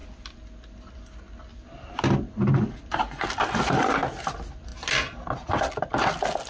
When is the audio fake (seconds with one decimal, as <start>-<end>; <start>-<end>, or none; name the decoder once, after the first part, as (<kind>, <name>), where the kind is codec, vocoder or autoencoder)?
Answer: none